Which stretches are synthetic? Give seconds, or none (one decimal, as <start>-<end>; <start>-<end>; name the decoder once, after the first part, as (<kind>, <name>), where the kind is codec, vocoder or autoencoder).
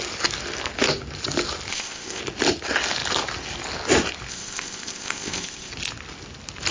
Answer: 1.7-2.2 (codec, ZipCodec); 4.3-5.7